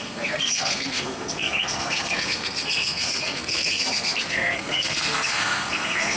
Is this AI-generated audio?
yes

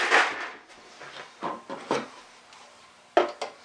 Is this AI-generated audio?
no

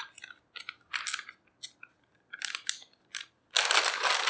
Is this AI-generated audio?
no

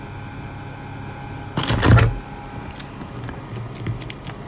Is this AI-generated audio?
no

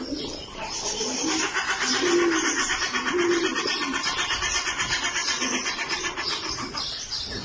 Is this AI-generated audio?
no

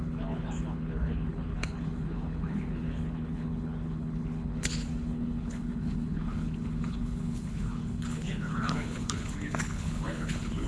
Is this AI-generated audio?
yes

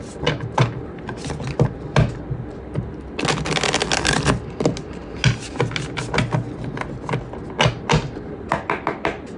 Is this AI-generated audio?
no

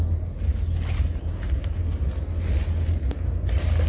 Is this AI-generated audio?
no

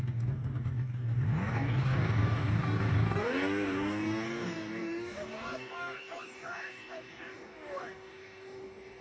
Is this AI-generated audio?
yes